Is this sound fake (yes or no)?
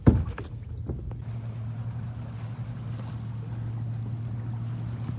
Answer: no